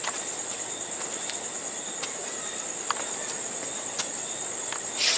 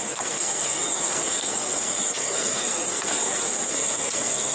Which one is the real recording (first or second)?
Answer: first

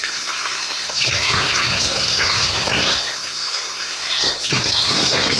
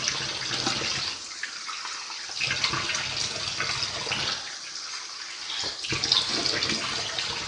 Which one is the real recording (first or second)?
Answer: second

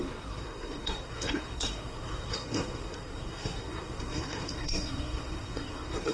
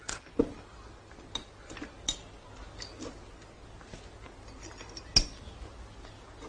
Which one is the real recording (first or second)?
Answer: second